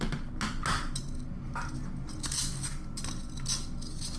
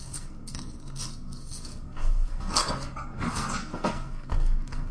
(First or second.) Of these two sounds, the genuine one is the first